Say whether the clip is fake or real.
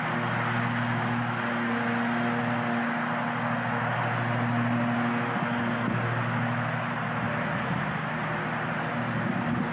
real